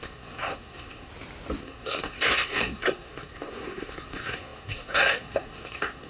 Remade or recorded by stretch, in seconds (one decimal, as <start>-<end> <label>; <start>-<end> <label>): 0.0-1.1 remade; 1.1-1.6 recorded; 1.6-6.1 remade